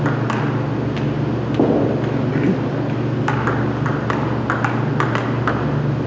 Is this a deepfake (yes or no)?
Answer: no